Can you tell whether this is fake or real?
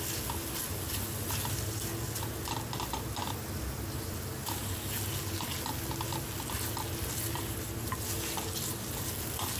real